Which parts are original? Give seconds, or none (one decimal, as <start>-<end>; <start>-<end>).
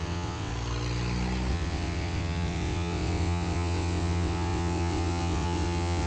0.5-1.5